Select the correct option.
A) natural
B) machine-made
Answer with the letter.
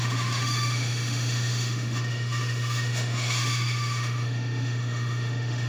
B